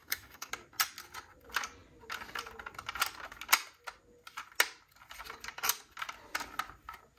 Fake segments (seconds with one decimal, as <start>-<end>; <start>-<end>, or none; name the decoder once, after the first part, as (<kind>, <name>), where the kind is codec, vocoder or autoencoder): 0.0-0.5 (codec, DAC)